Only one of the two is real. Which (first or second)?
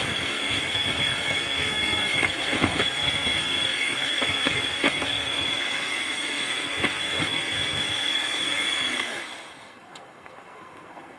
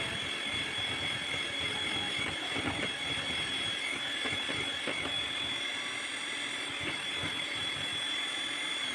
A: second